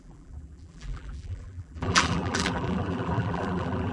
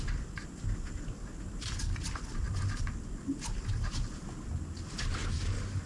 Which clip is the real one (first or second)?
second